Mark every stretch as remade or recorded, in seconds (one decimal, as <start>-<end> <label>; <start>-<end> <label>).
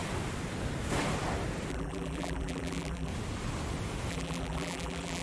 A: 0.0-1.7 recorded; 1.7-3.1 remade; 3.1-4.1 recorded; 4.1-5.2 remade